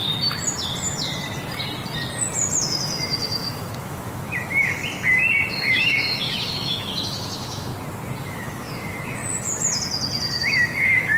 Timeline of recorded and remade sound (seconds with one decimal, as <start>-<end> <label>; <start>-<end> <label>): 0.0-2.6 recorded; 2.6-4.8 remade; 4.8-5.5 recorded; 5.5-7.7 remade; 7.7-8.2 recorded; 8.2-9.2 remade; 9.2-10.4 recorded; 10.4-11.2 remade